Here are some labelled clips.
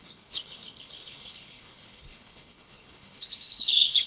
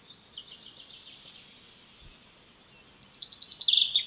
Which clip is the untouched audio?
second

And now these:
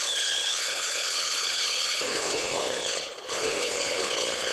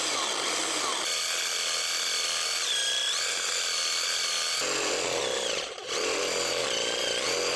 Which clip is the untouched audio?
second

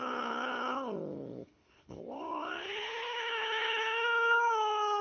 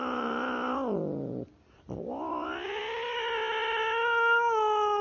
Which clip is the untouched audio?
second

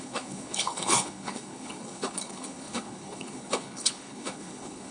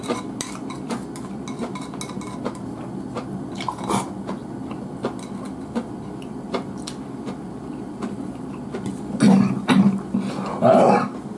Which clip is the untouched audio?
second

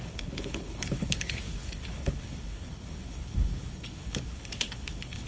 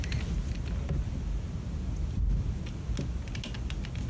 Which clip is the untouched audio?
second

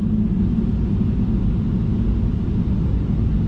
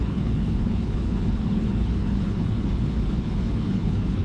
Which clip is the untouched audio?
first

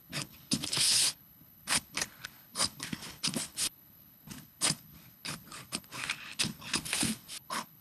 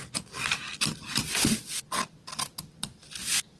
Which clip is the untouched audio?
second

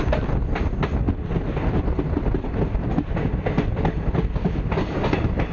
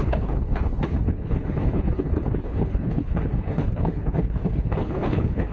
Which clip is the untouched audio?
first